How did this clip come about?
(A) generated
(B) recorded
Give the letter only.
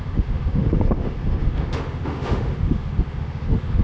A